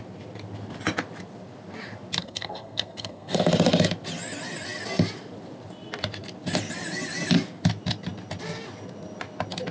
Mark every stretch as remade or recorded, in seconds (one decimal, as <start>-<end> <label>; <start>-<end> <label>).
0.0-2.2 recorded; 2.2-3.5 remade; 3.5-9.7 recorded

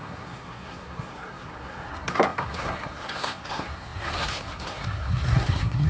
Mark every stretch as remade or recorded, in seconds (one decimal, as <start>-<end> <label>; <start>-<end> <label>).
0.0-5.9 remade

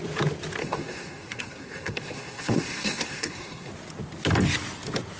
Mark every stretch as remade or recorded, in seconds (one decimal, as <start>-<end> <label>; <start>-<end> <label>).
0.0-0.6 recorded; 0.6-3.7 remade; 3.7-5.2 recorded

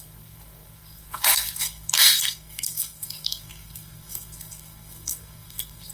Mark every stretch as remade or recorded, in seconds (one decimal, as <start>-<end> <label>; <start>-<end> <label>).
0.0-5.9 remade

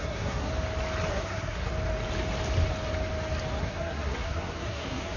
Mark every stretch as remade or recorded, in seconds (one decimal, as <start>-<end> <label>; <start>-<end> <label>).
0.0-0.5 remade; 0.5-1.1 recorded; 1.1-1.7 remade; 1.7-3.6 recorded; 3.6-5.2 remade